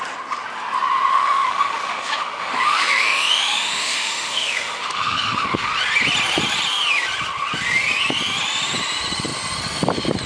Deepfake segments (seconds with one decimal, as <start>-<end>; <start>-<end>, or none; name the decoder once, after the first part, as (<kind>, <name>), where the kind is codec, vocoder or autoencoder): 1.1-5.7 (autoencoder, DAC-VAE)